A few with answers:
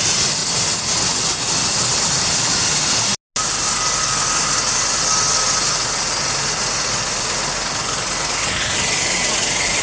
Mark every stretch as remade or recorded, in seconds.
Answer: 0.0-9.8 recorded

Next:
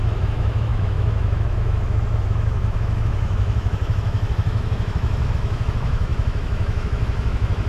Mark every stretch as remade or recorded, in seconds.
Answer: 0.0-7.7 remade